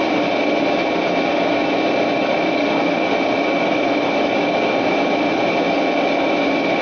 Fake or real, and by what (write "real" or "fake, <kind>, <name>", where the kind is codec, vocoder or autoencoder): real